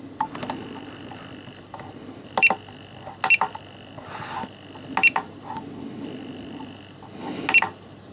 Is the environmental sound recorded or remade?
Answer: recorded